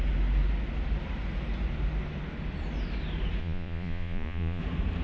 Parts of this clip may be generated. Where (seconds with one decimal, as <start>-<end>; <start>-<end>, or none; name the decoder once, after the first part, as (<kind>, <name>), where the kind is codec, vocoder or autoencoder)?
3.4-4.6 (vocoder, Vocos)